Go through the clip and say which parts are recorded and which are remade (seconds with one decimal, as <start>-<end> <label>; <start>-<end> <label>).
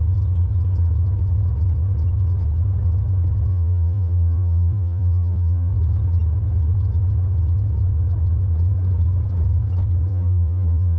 0.0-3.5 recorded; 3.5-5.7 remade; 5.7-10.1 recorded; 10.1-11.0 remade